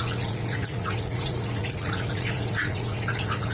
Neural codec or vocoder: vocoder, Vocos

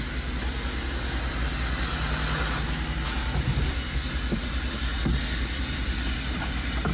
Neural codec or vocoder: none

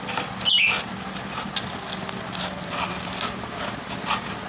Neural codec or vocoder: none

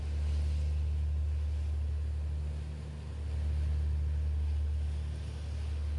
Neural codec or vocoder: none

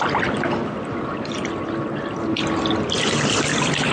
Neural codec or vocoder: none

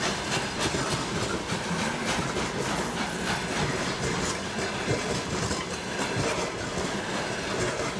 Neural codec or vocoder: vocoder, BigVGAN v2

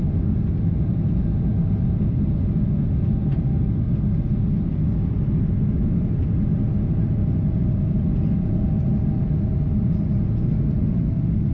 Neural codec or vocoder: none